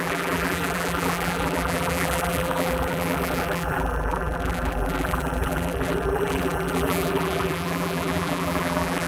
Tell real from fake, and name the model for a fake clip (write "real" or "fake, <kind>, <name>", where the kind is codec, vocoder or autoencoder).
fake, vocoder, BigVGAN v2